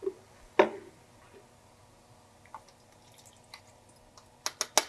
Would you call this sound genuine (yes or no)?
yes